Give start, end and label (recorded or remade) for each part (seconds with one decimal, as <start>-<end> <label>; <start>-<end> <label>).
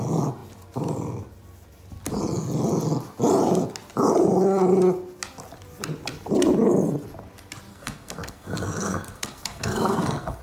0.0-7.7 recorded; 7.7-10.4 remade